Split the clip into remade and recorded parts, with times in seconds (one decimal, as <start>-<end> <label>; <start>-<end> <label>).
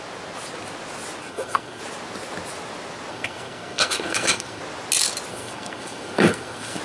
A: 0.0-1.2 recorded; 1.2-1.8 remade; 1.8-3.1 recorded; 3.1-4.6 remade; 4.6-5.3 recorded; 5.3-6.8 remade